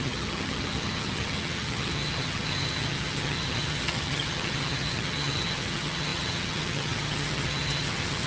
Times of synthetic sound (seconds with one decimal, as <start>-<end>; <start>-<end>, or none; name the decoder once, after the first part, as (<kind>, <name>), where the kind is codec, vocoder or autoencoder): 0.0-8.3 (vocoder, HiFi-GAN)